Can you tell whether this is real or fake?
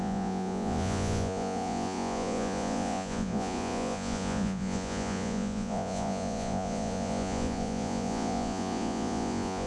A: fake